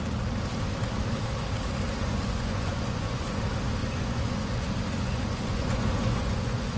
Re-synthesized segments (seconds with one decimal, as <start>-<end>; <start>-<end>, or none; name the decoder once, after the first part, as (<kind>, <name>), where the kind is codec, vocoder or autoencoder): 2.0-3.4 (vocoder, Vocos); 3.8-6.8